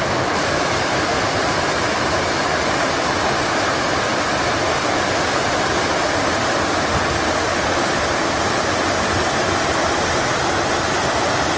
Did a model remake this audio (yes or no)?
no